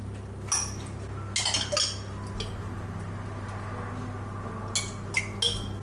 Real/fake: real